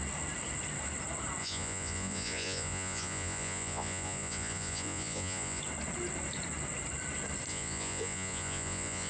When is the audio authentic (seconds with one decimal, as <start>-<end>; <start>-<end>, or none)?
0.0-1.4; 5.6-7.5